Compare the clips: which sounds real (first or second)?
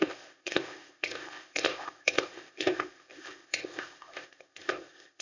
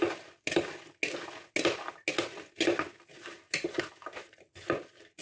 second